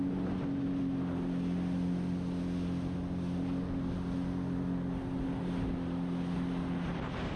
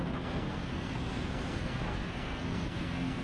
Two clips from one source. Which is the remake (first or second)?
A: second